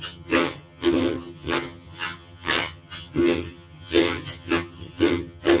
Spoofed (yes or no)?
yes